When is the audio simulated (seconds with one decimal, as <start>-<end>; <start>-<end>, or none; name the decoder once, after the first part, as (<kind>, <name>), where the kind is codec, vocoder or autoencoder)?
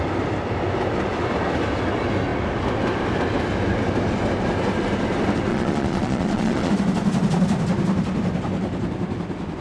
5.5-6.7 (vocoder, Vocos)